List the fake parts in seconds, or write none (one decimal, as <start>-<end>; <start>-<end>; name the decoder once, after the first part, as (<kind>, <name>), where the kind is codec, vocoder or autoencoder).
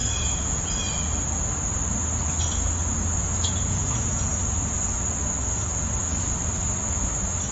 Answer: 0.0-0.6 (vocoder, Vocos); 3.2-4.3